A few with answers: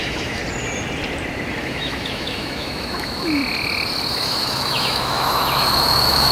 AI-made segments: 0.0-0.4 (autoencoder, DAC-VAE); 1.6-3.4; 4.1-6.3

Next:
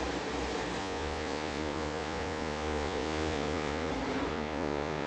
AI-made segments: 0.8-3.9 (vocoder, Vocos); 4.3-5.1

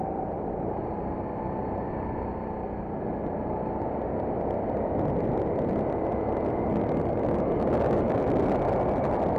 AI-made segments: 6.7-8.4 (codec, DAC)